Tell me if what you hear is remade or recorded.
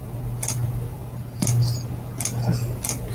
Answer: recorded